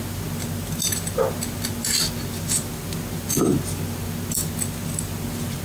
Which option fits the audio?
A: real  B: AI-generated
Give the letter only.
A